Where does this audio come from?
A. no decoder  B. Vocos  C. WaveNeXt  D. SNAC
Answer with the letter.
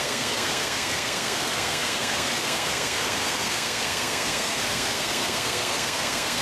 D